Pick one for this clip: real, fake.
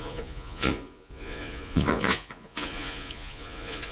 fake